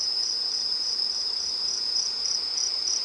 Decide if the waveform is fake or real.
fake